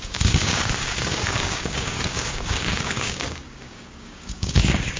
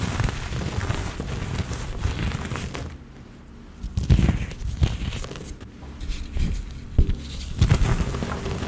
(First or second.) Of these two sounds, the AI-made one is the first